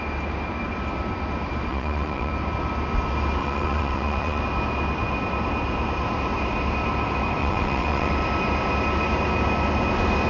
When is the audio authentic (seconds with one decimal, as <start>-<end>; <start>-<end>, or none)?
0.0-1.7; 2.3-3.4; 4.4-7.4; 8.1-10.3